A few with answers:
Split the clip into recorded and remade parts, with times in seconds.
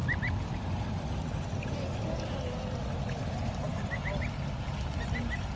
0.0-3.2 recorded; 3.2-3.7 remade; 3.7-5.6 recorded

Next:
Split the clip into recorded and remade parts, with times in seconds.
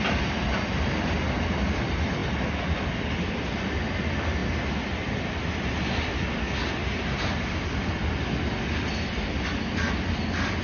0.0-2.2 recorded; 2.2-2.8 remade; 2.8-10.6 recorded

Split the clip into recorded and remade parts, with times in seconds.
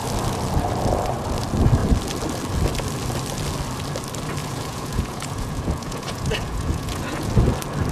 0.0-4.4 recorded; 4.4-7.3 remade; 7.3-7.9 recorded